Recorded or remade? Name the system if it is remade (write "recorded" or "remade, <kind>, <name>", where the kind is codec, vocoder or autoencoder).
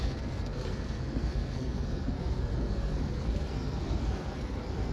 remade, codec, SNAC